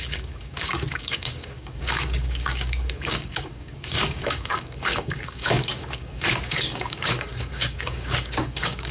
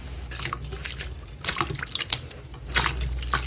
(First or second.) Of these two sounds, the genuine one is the second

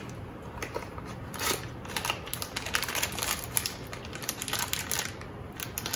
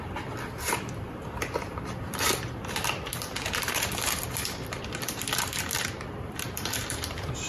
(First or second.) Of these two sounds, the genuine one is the first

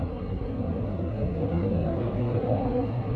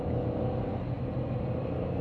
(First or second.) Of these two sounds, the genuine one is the second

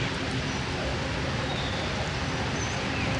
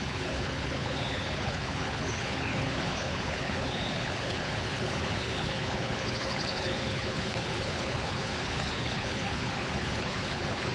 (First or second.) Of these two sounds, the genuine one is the first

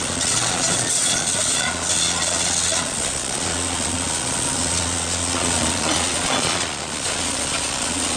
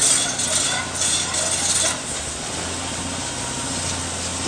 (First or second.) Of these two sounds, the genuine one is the second